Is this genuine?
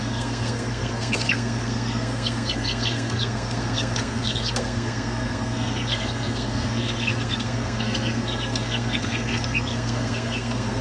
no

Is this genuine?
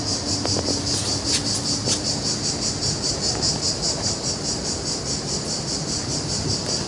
yes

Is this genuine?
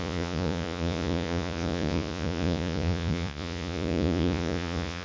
no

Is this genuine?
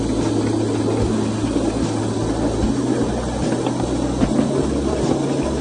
yes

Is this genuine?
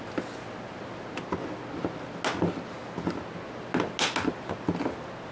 yes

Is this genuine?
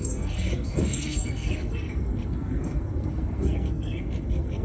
no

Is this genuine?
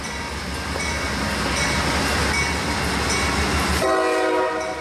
yes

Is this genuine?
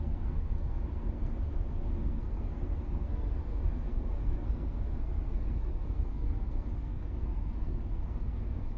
no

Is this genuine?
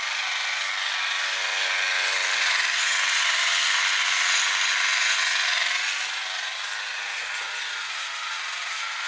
yes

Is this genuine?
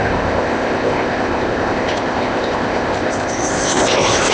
no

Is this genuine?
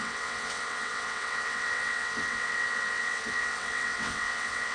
no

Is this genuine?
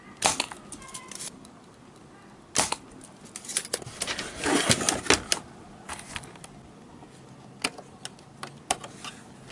yes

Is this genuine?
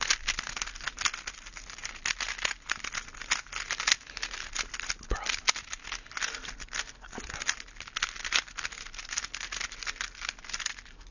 yes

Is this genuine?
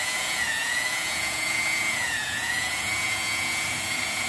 no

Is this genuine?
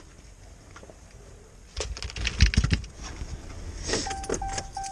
yes